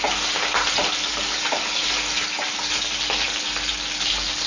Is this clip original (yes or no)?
yes